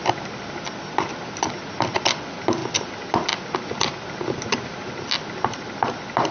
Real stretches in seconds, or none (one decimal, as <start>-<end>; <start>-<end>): 0.0-6.3